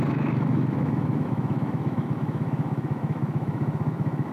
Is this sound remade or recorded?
remade